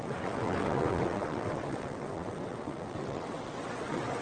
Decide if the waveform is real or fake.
fake